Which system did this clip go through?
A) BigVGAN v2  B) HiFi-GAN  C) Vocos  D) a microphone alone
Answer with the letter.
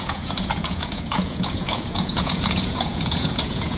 C